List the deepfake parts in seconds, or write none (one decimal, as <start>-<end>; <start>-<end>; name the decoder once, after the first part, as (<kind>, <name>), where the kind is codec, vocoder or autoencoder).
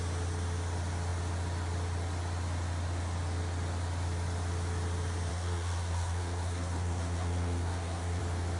5.3-8.2 (codec, SNAC)